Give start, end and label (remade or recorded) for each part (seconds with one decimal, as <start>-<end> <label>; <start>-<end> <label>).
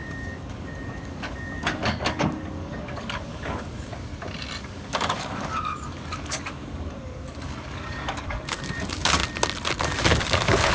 0.0-4.1 remade; 4.1-4.6 recorded; 4.6-9.2 remade; 9.2-9.8 recorded; 9.8-10.7 remade